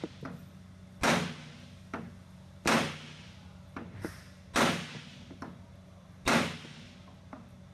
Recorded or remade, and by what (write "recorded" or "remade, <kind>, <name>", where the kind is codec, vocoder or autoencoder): recorded